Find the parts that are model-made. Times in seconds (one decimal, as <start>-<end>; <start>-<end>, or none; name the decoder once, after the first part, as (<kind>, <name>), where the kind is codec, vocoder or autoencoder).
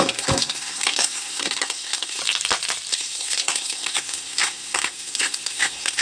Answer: 0.0-2.2 (codec, SNAC); 2.9-6.0